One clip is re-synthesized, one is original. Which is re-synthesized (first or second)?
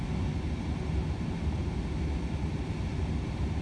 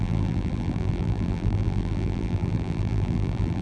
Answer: second